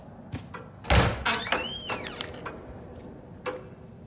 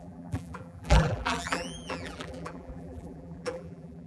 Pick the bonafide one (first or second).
first